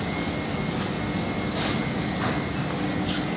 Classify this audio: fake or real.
real